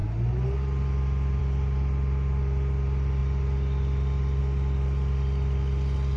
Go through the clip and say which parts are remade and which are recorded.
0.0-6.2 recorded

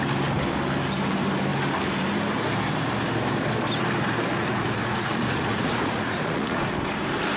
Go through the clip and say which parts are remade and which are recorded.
0.0-4.4 recorded; 4.4-6.6 remade; 6.6-7.4 recorded

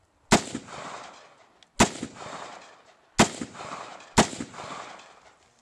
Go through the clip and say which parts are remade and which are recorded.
0.0-5.6 recorded

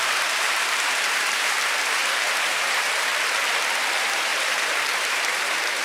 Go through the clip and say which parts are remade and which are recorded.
0.0-3.1 remade; 3.1-3.9 recorded; 3.9-5.8 remade

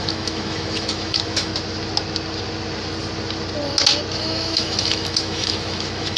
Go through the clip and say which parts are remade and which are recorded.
0.0-1.5 remade; 1.5-4.2 recorded; 4.2-6.2 remade

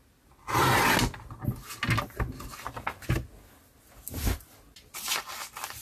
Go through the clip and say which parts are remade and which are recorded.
0.0-5.8 recorded

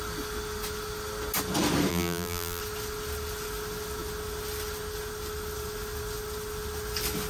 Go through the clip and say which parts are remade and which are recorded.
0.0-1.9 recorded; 1.9-2.6 remade; 2.6-7.3 recorded

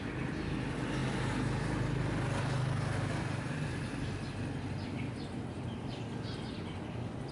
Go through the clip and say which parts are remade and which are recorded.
0.0-7.3 recorded